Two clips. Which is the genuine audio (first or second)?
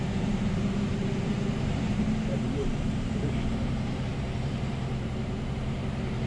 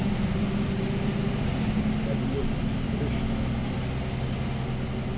second